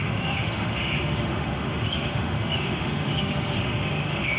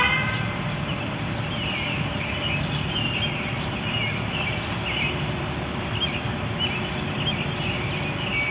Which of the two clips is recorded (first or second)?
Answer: second